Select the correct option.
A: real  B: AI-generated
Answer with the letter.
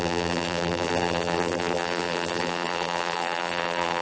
B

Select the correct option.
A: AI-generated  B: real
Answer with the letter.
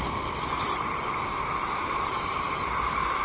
B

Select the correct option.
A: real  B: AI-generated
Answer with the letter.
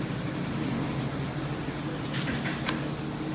A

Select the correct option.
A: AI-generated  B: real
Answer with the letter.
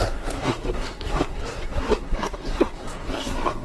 A